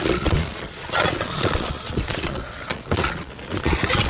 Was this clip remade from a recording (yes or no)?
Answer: yes